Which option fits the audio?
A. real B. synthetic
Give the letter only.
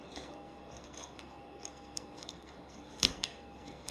B